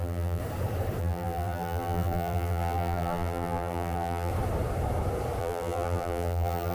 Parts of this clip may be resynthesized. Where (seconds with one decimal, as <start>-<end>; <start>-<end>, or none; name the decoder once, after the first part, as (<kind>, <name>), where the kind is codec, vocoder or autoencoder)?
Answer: 0.0-0.4 (vocoder, BigVGAN v2); 1.0-4.3; 5.4-6.7